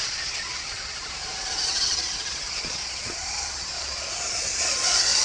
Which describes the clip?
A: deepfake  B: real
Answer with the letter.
A